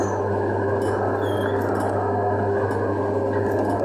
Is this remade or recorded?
recorded